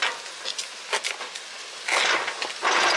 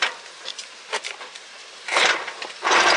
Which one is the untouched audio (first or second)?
first